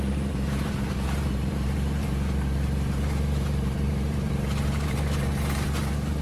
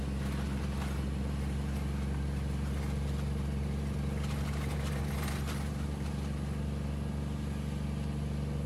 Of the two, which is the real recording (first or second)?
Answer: second